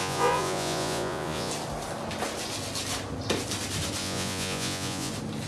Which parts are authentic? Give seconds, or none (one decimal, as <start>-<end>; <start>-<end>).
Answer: 1.5-4.0; 5.1-5.5